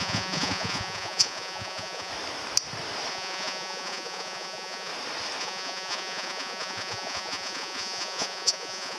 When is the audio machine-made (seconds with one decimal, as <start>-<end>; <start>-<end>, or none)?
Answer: 0.0-2.1; 3.1-4.9; 5.4-9.0